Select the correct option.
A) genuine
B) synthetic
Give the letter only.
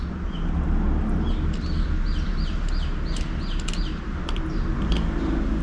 A